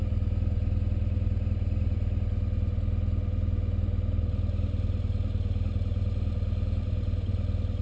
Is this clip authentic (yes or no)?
yes